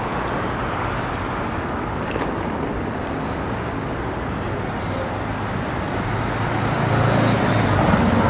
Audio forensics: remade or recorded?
recorded